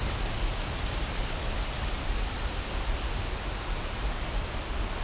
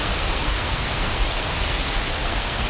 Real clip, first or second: first